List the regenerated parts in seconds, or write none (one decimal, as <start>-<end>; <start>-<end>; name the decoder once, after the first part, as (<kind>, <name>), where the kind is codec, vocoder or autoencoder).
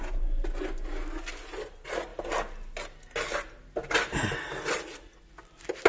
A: none